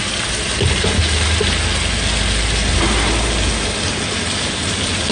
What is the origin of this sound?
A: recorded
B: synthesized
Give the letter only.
A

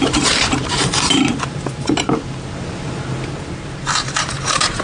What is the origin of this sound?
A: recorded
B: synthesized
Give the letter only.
B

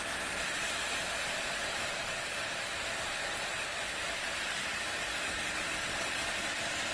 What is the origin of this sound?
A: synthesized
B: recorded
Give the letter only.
A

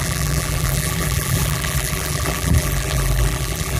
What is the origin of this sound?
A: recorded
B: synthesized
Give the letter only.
B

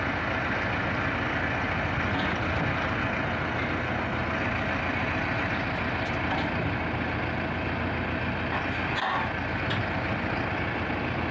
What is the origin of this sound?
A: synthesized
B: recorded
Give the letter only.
B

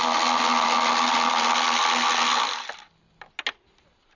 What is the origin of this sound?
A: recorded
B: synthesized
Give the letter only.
A